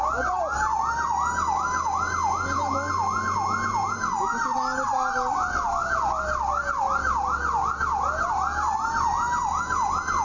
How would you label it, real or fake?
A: real